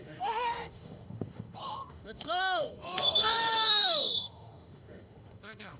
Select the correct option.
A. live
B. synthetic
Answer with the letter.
B